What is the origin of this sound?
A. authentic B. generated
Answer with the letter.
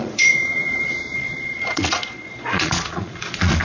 B